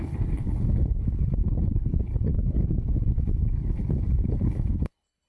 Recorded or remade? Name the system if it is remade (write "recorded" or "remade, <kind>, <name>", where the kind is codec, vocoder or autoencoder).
remade, codec, HILCodec